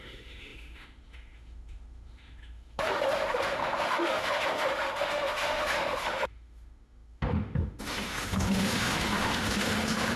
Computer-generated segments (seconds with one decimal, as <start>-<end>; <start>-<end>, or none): 0.0-10.2